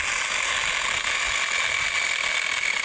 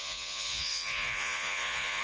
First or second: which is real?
first